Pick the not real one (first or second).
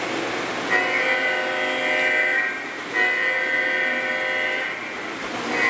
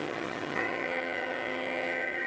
second